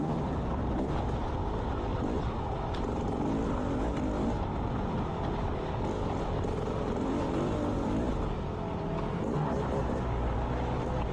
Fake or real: real